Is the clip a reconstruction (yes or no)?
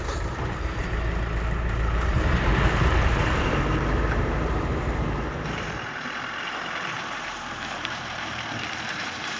yes